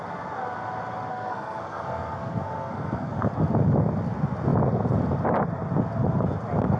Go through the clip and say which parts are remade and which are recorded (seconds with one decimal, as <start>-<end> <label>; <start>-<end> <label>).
0.0-1.1 recorded; 1.1-3.1 remade; 3.1-6.8 recorded